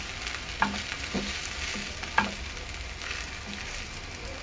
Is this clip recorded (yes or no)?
yes